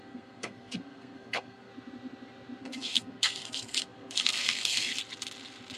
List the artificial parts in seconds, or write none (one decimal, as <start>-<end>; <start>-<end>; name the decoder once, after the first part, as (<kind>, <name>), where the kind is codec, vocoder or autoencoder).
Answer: 0.0-1.7 (codec, SNAC); 2.6-4.9

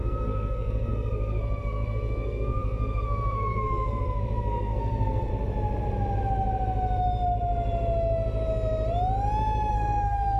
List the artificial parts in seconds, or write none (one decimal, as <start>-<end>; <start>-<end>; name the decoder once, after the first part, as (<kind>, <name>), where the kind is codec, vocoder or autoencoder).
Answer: 0.0-5.3 (codec, SNAC); 9.7-10.4

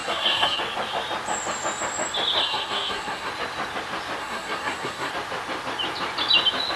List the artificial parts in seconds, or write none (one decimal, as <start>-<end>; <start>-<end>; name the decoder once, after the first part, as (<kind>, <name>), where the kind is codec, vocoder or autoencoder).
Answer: 0.0-0.6 (codec, SNAC); 2.4-3.3; 4.2-5.1